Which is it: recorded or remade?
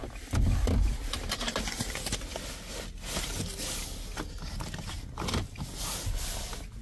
recorded